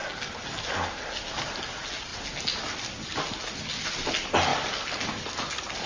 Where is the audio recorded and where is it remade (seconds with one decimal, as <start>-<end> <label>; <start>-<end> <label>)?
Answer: 0.0-5.9 recorded

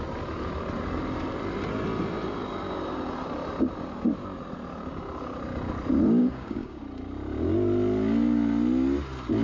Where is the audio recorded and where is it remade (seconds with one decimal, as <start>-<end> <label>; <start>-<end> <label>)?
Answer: 0.0-6.2 recorded; 6.2-6.8 remade; 6.8-9.4 recorded